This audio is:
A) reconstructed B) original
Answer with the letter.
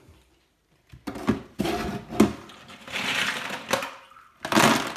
B